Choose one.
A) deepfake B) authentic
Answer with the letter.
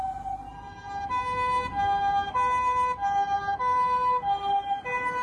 B